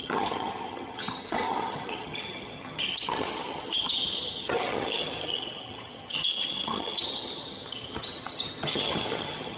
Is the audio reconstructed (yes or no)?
yes